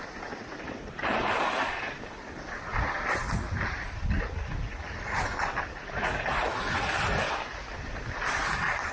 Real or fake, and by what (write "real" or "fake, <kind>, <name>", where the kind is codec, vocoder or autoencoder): real